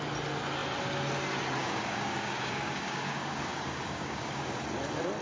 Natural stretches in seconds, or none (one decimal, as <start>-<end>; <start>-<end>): 0.0-1.6; 4.6-5.2